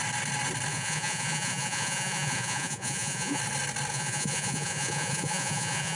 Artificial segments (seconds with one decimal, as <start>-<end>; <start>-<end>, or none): 0.7-3.4; 3.9-6.0